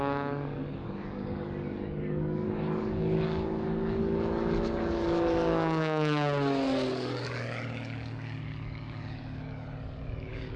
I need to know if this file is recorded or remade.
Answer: remade